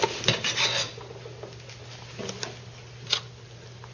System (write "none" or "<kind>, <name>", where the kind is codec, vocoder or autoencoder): none